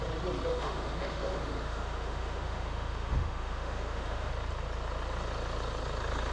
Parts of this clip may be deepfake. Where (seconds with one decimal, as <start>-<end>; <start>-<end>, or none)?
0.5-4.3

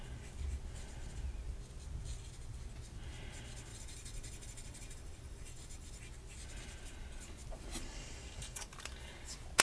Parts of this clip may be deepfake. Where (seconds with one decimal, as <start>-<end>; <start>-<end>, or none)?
3.7-6.0

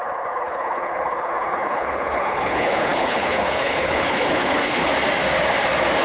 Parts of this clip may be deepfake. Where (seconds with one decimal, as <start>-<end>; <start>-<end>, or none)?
0.0-4.8

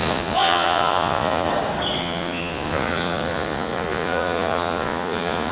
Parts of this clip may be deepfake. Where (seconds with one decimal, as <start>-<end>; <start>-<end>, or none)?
0.0-1.5; 2.0-5.5

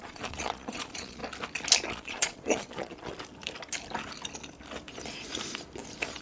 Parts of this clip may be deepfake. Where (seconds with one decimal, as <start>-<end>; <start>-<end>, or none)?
0.0-1.2; 1.9-3.1